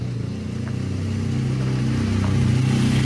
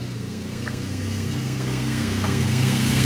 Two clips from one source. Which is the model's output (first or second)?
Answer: second